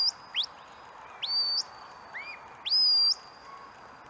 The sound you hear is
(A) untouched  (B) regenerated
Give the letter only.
A